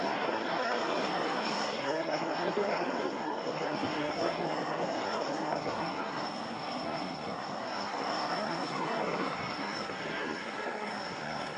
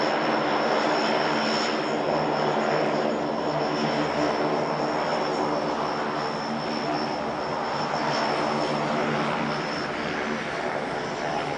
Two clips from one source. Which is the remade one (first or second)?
first